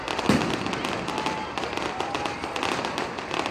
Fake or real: real